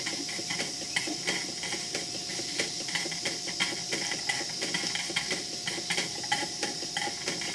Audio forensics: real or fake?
real